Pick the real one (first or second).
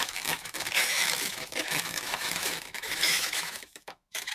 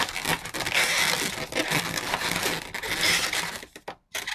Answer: second